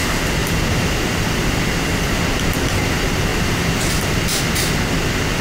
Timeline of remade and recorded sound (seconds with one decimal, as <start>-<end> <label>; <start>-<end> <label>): 0.0-0.4 recorded; 0.4-1.6 remade; 1.6-3.3 recorded; 3.3-4.4 remade; 4.4-5.4 recorded